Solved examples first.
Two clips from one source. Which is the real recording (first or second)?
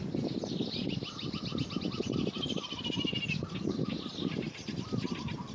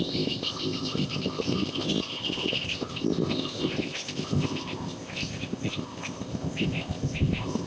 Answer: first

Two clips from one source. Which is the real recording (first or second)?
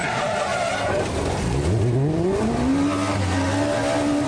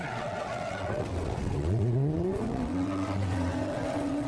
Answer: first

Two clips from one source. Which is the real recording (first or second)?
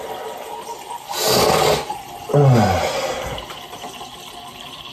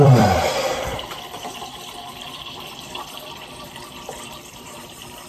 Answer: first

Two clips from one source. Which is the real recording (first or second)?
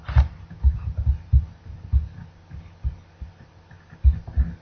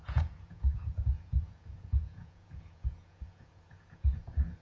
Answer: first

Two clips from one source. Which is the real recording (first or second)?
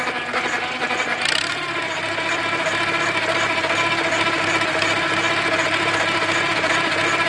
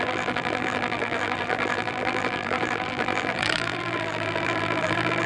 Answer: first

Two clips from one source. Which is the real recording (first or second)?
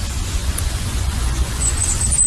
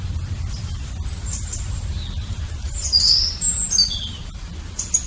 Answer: second